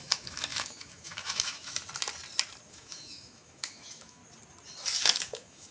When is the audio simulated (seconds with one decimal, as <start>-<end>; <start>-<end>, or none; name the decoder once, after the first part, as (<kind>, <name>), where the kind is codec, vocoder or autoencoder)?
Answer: 0.0-1.8 (autoencoder, DAC-VAE); 2.7-4.2; 5.0-5.7